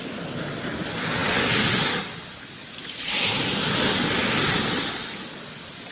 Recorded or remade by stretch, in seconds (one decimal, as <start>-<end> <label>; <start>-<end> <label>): 0.0-5.9 recorded